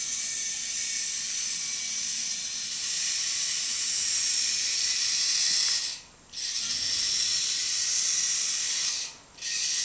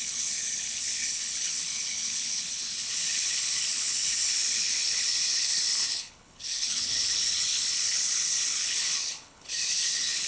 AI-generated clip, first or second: second